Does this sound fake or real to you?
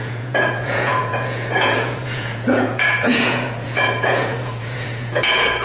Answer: fake